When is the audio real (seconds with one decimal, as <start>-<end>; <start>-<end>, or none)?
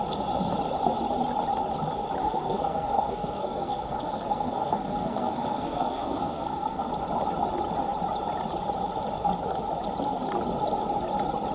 0.0-2.2; 6.9-11.5